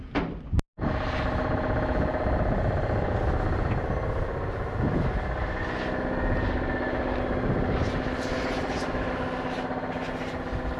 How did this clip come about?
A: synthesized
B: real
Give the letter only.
B